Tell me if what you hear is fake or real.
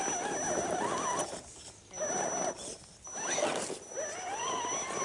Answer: real